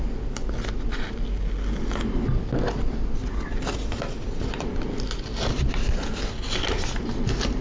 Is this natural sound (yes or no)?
yes